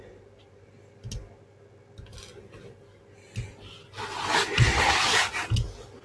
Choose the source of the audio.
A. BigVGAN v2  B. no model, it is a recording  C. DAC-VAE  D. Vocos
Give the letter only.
B